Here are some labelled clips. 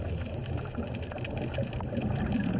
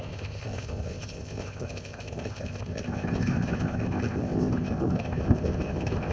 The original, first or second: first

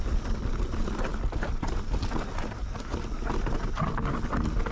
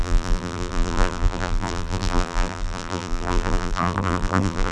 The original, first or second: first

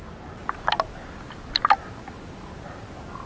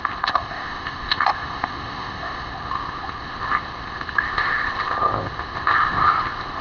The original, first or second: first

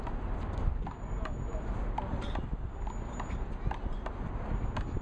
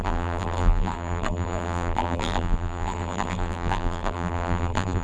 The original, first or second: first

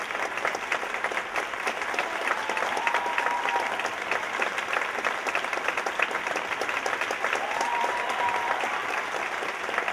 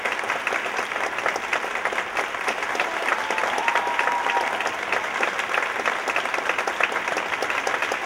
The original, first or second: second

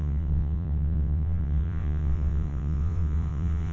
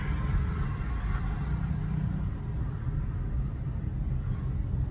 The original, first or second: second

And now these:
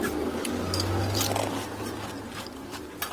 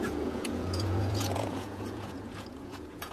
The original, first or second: first